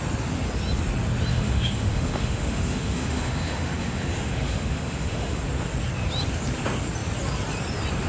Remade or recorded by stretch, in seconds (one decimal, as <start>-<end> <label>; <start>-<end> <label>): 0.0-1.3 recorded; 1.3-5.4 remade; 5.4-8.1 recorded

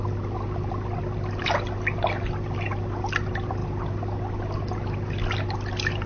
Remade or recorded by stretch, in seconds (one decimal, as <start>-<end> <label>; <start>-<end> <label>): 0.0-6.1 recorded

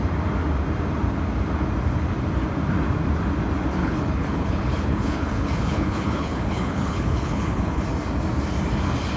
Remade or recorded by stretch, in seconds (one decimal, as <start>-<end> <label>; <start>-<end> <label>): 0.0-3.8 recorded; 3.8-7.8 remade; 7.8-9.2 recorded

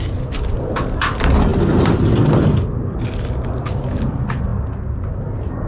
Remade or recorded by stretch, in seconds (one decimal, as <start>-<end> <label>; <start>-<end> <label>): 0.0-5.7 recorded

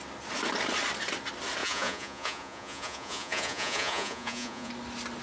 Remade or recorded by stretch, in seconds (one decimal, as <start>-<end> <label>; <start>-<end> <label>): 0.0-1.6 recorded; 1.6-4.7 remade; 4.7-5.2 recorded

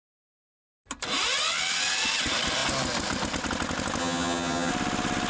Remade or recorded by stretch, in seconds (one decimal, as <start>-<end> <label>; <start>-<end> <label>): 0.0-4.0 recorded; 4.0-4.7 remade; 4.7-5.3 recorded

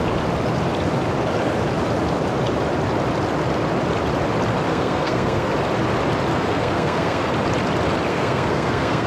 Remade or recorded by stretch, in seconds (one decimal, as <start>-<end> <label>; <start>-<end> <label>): 0.0-4.7 recorded; 4.7-5.5 remade; 5.5-6.3 recorded; 6.3-7.3 remade; 7.3-8.1 recorded; 8.1-9.1 remade

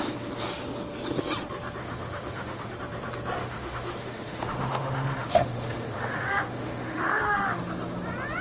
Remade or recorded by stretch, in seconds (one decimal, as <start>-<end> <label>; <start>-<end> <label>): 0.0-1.8 recorded; 1.8-2.7 remade; 2.7-3.4 recorded; 3.4-7.6 remade; 7.6-8.4 recorded